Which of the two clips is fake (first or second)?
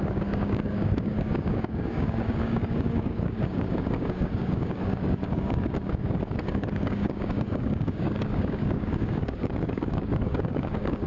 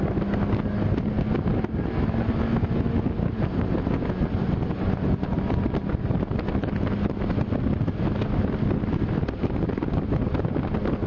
first